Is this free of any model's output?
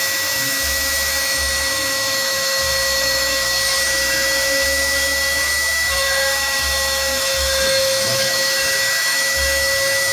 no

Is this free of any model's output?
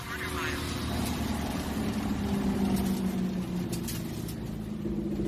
yes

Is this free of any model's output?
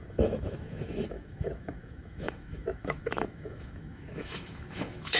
no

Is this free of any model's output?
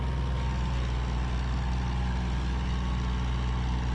yes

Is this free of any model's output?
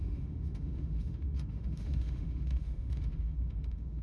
no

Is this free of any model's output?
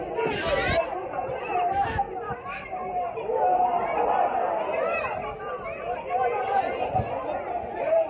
yes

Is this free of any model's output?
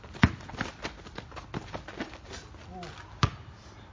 yes